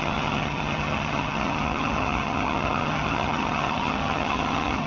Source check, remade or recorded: remade